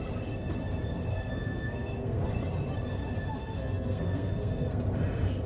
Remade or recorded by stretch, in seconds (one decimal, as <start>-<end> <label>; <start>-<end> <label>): 0.0-1.1 recorded; 1.1-2.2 remade; 2.2-3.4 recorded; 3.4-4.8 remade; 4.8-5.5 recorded